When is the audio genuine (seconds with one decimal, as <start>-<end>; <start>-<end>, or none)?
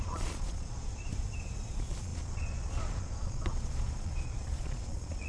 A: 1.1-1.7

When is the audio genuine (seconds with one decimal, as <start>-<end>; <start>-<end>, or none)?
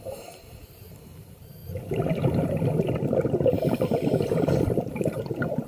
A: 1.6-4.8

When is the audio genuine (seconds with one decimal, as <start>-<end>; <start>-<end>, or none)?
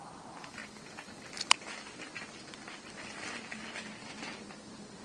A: 0.0-0.6; 3.6-5.0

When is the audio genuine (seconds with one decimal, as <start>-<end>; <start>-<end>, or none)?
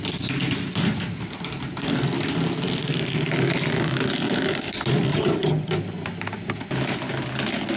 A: 0.0-5.1; 5.7-7.8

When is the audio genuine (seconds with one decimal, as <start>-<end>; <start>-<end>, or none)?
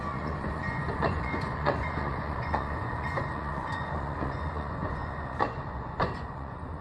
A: none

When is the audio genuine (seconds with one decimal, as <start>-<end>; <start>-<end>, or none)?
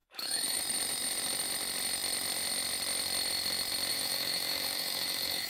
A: 0.6-3.9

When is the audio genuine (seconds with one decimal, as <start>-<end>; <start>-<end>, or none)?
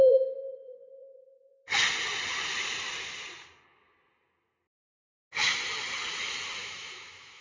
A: 0.0-6.6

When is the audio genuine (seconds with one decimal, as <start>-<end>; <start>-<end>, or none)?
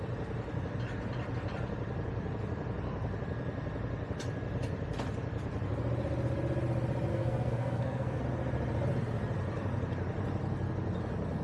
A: 0.0-7.1; 8.2-11.4